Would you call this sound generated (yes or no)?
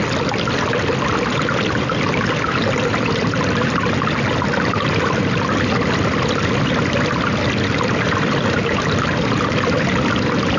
no